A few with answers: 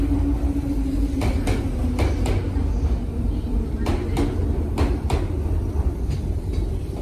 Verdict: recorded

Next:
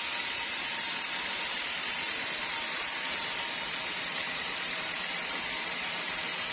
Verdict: remade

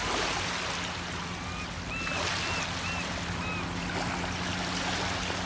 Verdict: recorded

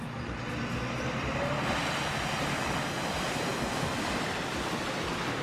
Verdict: recorded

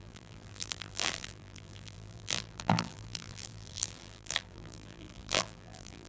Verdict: remade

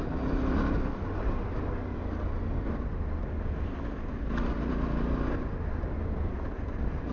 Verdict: recorded